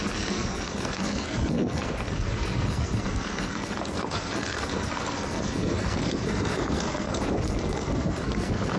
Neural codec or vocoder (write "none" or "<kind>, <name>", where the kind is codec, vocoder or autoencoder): codec, SNAC